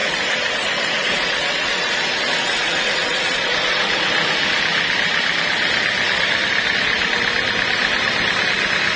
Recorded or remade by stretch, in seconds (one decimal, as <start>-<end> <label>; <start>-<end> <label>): 0.0-4.1 remade; 4.1-9.0 recorded